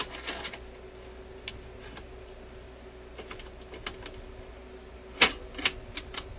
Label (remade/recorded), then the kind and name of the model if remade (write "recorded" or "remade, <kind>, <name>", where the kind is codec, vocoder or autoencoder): recorded